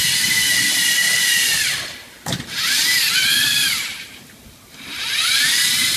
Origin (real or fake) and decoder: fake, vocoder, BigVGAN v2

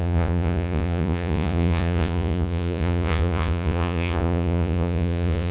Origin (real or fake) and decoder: fake, vocoder, Vocos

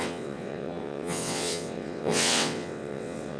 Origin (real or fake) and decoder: fake, vocoder, WaveNeXt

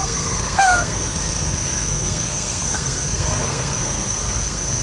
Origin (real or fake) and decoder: fake, codec, SNAC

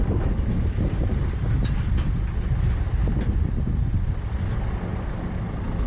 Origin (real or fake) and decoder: real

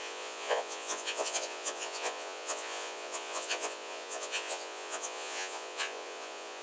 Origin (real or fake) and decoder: fake, vocoder, Vocos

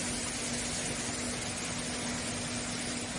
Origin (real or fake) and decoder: real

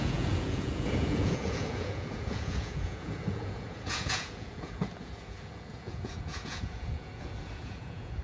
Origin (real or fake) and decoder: fake, vocoder, Vocos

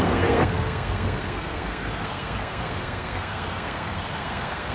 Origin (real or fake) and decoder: fake, codec, SNAC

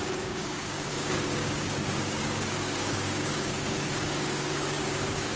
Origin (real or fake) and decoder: fake, codec, DAC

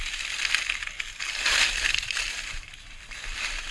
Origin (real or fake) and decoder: fake, vocoder, BigVGAN v2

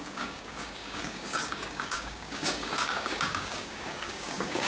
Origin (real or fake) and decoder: fake, codec, DAC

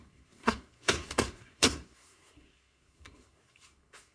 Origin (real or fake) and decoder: fake, codec, SNAC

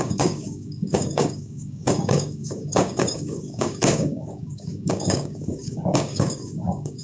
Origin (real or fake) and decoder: fake, codec, DAC